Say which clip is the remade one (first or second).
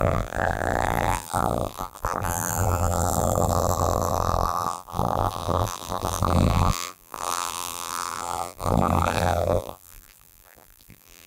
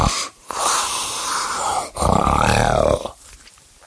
first